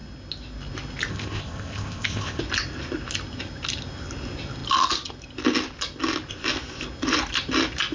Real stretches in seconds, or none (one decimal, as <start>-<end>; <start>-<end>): 0.0-1.1; 2.4-7.9